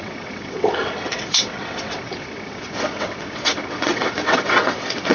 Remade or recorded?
remade